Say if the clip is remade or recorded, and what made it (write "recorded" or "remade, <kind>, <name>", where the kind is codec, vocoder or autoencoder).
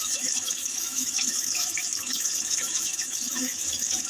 remade, autoencoder, DAC-VAE